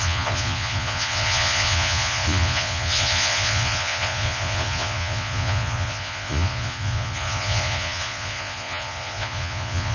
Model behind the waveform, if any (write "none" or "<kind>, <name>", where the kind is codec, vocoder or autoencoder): vocoder, Vocos